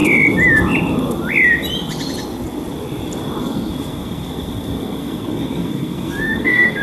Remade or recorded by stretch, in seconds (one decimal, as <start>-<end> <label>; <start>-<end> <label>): 0.0-3.4 recorded; 3.4-6.8 remade